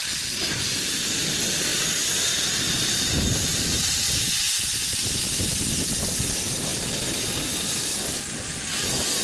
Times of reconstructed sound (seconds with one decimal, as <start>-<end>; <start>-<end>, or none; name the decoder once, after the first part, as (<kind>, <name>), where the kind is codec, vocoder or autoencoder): 1.7-5.6 (vocoder, BigVGAN v2)